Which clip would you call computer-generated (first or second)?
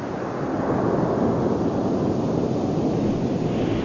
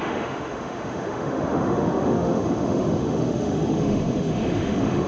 second